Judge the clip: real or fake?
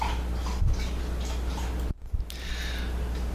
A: real